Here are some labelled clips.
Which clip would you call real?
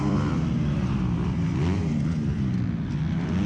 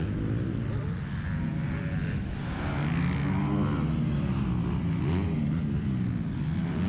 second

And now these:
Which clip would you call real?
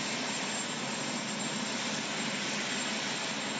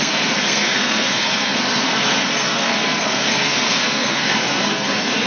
first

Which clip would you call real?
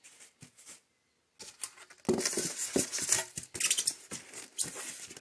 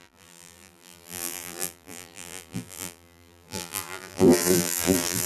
first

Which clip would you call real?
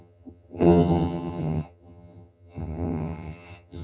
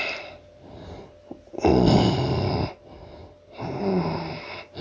second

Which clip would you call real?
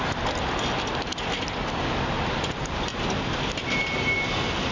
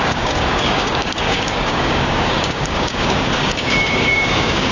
first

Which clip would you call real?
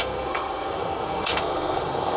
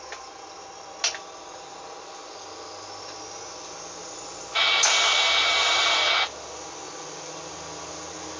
second